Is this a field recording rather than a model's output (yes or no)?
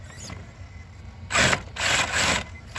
yes